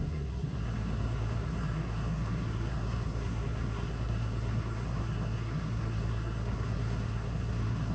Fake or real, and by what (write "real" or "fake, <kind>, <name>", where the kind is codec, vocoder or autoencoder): fake, codec, SNAC